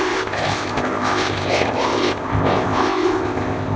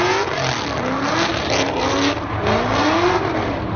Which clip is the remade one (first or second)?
first